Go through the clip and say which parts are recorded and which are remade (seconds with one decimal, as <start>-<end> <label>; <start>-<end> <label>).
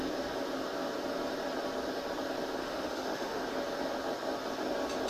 0.0-2.6 recorded; 2.6-3.4 remade; 3.4-5.1 recorded